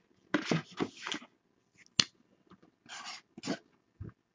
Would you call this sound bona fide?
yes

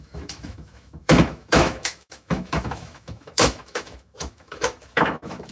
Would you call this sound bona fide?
no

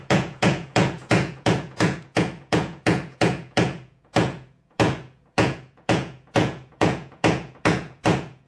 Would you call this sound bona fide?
no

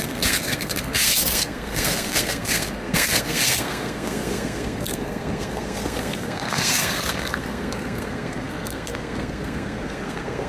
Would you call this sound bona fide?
no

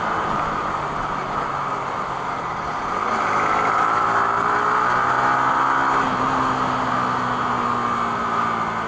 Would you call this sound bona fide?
yes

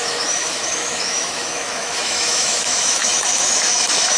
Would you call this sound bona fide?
no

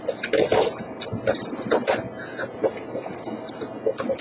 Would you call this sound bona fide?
yes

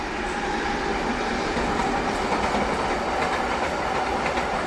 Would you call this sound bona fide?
yes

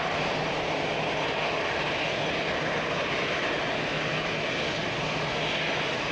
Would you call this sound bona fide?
yes